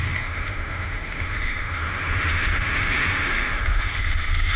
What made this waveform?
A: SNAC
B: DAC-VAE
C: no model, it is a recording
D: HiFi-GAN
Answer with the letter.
B